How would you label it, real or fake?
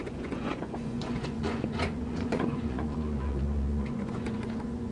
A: fake